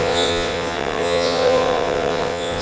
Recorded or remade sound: remade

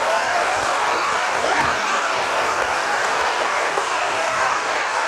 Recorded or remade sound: remade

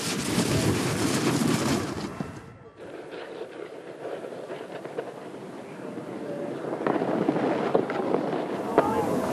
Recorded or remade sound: recorded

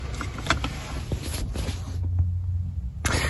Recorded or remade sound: recorded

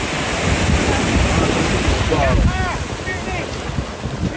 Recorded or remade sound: recorded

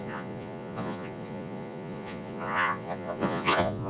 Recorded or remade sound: remade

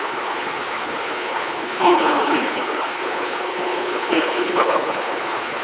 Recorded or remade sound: remade